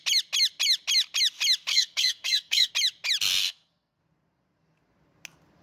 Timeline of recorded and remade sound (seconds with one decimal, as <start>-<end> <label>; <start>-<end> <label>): 0.0-1.7 recorded; 1.7-2.7 remade; 2.7-3.4 recorded; 3.4-4.0 remade; 4.0-5.6 recorded